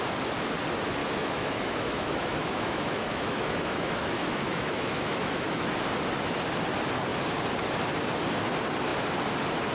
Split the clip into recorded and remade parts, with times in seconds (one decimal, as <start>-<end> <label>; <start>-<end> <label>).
0.0-1.0 recorded; 1.0-5.7 remade; 5.7-9.7 recorded